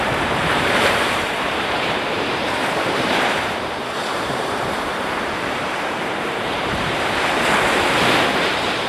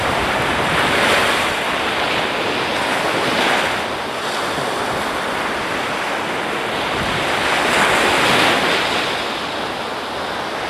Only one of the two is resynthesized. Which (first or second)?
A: first